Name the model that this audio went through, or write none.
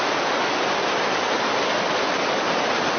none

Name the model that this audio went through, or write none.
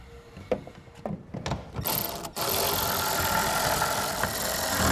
none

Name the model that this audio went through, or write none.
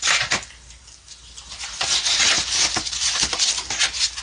none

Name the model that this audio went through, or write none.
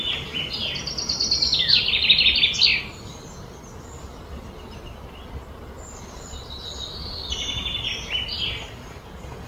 none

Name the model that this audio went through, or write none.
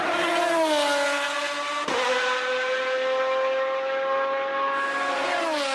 none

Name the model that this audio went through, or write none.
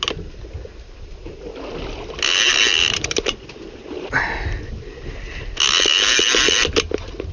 none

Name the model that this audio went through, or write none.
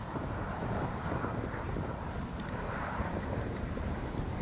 vocoder, BigVGAN v2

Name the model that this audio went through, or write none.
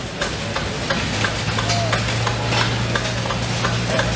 none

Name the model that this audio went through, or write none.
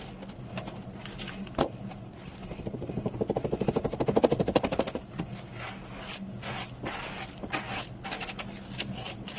none